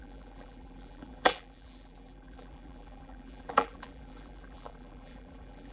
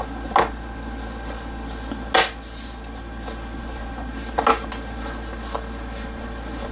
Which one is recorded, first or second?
second